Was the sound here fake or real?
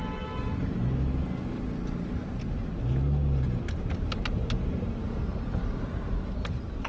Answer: real